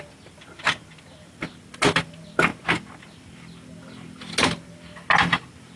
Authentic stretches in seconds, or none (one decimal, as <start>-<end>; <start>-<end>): 0.0-5.8

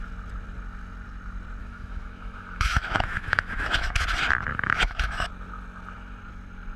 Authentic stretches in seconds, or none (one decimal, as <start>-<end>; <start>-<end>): 0.0-1.6; 4.0-4.5; 5.3-6.8